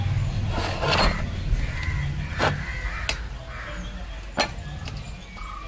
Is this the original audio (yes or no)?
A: yes